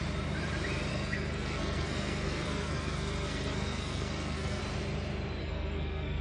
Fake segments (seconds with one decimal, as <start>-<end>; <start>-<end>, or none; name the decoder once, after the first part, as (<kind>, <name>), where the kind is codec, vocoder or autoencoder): 0.9-4.6 (codec, SNAC); 5.4-6.2